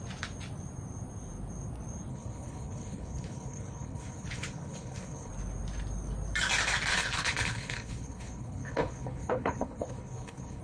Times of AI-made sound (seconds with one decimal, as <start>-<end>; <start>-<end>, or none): 2.1-5.3; 6.9-10.6